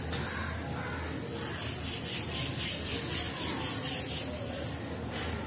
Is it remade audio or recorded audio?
recorded